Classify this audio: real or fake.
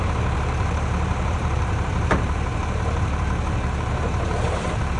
fake